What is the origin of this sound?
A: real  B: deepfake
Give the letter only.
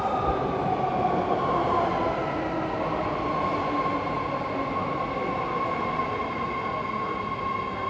A